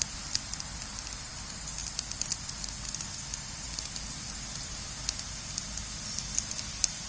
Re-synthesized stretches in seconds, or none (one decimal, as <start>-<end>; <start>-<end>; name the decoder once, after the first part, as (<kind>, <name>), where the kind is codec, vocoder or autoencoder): none